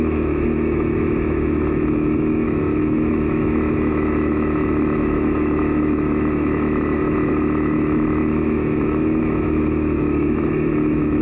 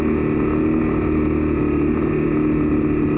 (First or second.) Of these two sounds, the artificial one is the first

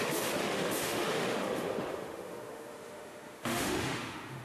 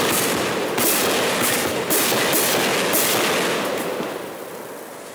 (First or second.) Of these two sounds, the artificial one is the first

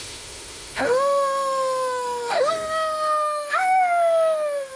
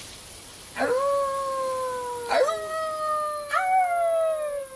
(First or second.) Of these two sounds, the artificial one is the first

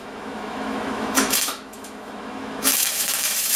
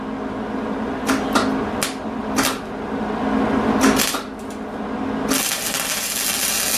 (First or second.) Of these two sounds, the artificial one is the first